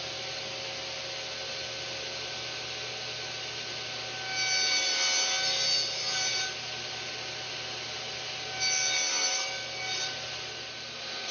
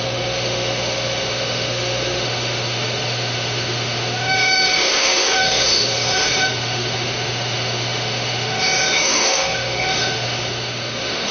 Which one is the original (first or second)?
first